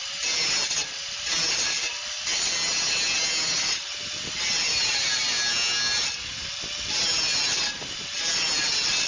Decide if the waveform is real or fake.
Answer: real